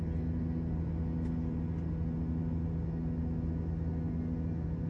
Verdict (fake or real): real